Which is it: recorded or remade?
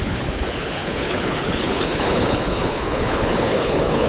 remade